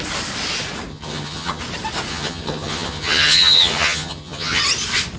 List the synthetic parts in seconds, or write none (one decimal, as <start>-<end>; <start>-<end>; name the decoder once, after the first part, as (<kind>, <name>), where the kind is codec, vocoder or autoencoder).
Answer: 0.9-1.6 (vocoder, HiFi-GAN); 2.1-4.6